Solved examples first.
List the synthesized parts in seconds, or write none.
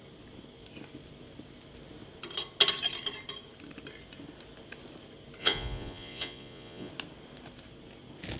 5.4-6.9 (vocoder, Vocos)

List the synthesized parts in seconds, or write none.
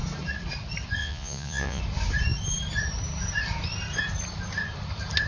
1.0-1.8 (vocoder, Vocos)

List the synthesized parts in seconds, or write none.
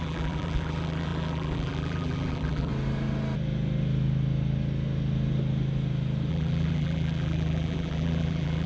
0.0-2.7 (vocoder, BigVGAN v2); 6.3-8.7